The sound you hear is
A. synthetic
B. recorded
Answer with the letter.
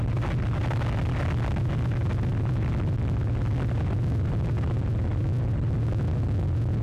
B